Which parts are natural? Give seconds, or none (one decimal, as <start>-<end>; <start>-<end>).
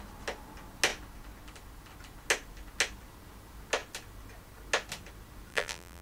0.0-5.5